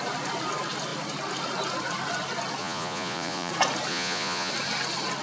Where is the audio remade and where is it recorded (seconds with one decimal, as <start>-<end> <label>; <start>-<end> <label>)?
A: 0.0-2.6 recorded; 2.6-3.5 remade; 3.5-3.9 recorded; 3.9-4.5 remade; 4.5-5.2 recorded